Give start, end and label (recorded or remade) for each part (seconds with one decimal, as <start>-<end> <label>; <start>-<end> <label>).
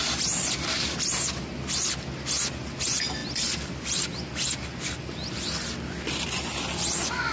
0.0-7.3 recorded